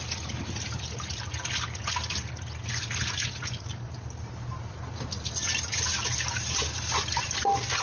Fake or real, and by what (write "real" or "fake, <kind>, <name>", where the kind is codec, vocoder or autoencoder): real